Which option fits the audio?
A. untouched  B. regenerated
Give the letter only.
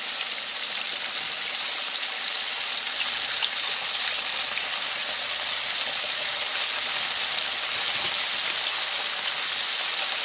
A